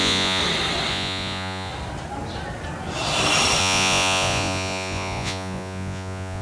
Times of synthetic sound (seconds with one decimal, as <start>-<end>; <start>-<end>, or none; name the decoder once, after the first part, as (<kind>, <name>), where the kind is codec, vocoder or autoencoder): 0.0-0.4 (vocoder, Vocos); 0.9-1.7; 3.6-6.4